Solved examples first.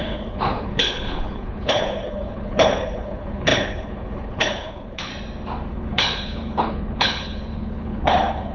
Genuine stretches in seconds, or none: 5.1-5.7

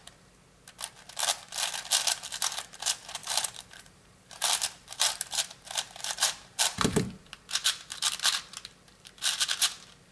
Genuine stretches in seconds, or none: 0.0-3.2; 6.6-10.1

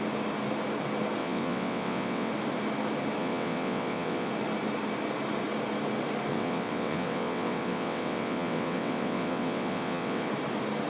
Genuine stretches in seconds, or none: 0.0-1.2; 2.3-3.2; 4.3-6.3; 10.3-10.9

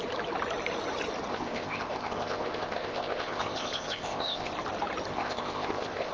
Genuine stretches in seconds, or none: 0.0-1.3; 4.5-5.1

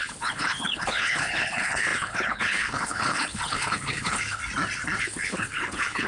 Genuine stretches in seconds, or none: 4.4-5.0

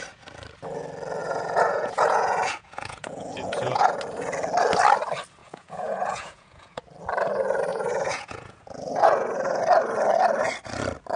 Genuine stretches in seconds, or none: 0.0-1.2; 4.0-5.4; 6.8-7.7; 9.6-11.2

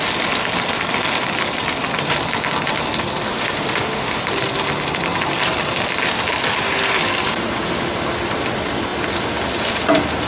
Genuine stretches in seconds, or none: 0.0-3.3; 4.2-10.3

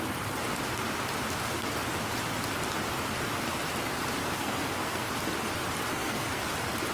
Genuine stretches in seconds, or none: 0.0-4.2; 5.1-5.9; 6.5-6.9